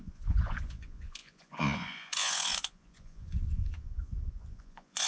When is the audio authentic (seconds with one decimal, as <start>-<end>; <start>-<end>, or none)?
none